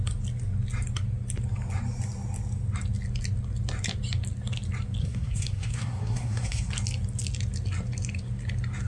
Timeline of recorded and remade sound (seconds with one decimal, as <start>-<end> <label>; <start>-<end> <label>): 0.0-5.0 recorded; 5.0-6.7 remade; 6.7-8.9 recorded